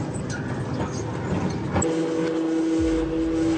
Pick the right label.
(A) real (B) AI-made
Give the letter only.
A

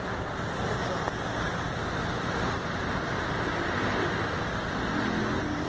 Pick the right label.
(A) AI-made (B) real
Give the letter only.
B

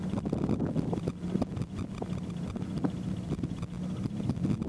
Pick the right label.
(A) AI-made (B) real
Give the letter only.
B